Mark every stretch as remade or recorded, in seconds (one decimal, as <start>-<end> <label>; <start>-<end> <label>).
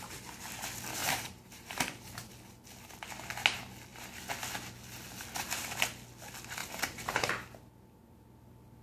0.0-1.0 recorded; 1.0-2.3 remade; 2.3-6.6 recorded; 6.6-7.3 remade; 7.3-8.8 recorded